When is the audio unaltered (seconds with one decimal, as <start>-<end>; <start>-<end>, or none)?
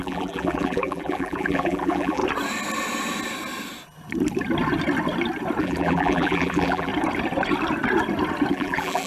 2.2-5.6; 6.9-8.5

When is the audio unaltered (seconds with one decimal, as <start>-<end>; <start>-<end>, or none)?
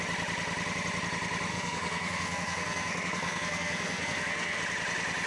0.0-1.5; 4.6-5.3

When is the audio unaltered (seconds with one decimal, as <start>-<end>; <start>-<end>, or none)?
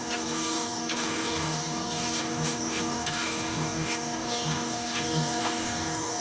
none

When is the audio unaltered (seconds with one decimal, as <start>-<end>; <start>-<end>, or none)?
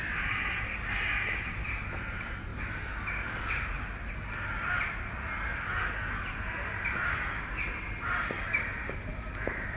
0.0-5.5; 7.8-9.1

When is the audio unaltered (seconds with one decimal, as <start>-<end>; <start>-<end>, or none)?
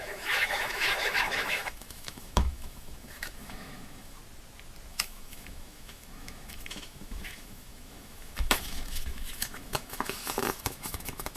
4.2-4.9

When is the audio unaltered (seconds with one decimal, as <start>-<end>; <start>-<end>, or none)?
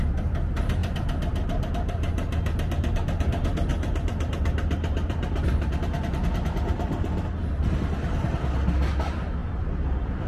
0.0-3.7; 5.7-9.4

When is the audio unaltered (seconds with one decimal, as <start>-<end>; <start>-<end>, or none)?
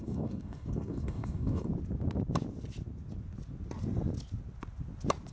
1.7-5.3